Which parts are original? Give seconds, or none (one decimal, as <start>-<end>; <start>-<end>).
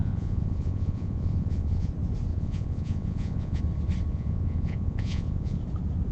1.9-2.3; 3.6-4.1; 5.6-6.1